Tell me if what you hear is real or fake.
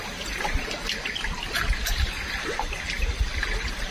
real